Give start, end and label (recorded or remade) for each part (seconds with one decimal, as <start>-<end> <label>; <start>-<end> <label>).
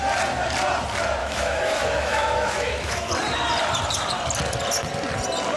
0.0-1.2 recorded; 1.2-3.1 remade; 3.1-5.6 recorded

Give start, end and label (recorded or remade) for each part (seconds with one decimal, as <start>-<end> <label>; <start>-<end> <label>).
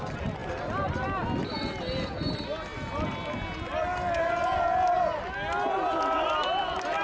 0.0-7.0 recorded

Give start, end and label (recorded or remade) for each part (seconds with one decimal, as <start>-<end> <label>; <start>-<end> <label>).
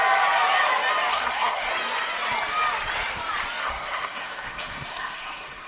0.0-1.1 recorded; 1.1-1.7 remade; 1.7-3.6 recorded; 3.6-5.7 remade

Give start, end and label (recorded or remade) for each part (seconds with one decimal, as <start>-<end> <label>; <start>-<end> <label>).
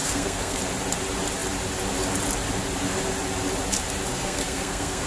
0.0-0.6 remade; 0.6-4.1 recorded; 4.1-5.1 remade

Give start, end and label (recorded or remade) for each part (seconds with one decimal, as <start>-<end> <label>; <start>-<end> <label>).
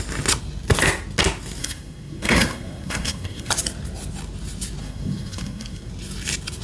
0.0-1.6 recorded; 1.6-3.5 remade; 3.5-4.8 recorded; 4.8-5.9 remade; 5.9-6.6 recorded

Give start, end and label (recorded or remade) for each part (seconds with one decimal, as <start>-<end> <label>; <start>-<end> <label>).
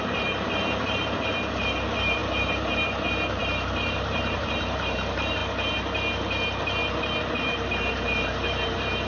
0.0-5.4 remade; 5.4-7.2 recorded; 7.2-9.1 remade